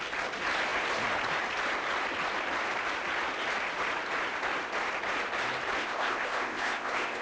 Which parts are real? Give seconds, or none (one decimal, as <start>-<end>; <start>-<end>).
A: 0.0-5.8